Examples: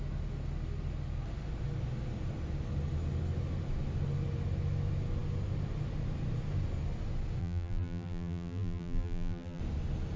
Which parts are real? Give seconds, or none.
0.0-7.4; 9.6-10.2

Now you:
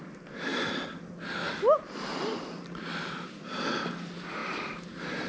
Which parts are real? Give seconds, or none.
0.0-4.4

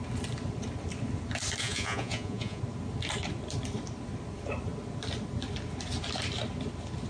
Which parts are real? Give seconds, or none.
0.0-1.6; 2.6-7.1

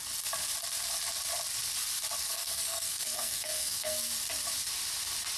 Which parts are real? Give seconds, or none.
0.0-2.2; 4.1-5.4

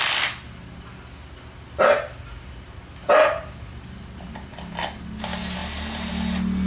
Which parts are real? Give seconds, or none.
0.0-6.7

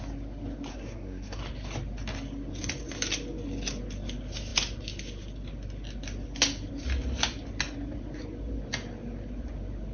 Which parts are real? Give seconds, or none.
0.0-0.7; 1.4-9.9

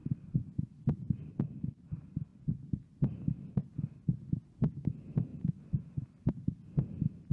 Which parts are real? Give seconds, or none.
1.1-5.3; 6.3-7.3

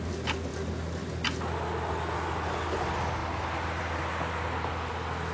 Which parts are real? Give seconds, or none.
0.0-5.3